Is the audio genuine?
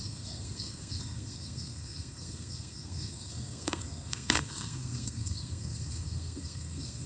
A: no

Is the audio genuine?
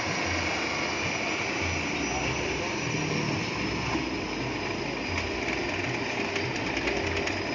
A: yes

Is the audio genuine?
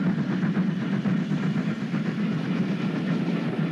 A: yes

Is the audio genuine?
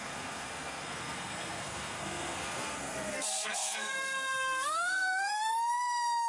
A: no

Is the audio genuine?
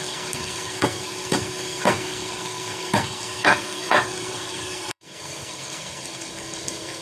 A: no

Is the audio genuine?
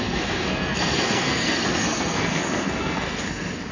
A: no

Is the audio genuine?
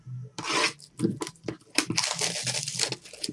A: yes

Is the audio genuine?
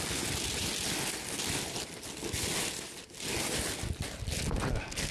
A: yes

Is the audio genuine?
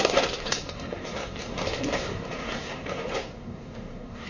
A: no